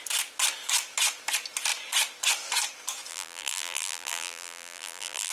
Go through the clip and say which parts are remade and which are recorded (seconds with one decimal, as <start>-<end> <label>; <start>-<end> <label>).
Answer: 0.0-3.1 recorded; 3.1-5.3 remade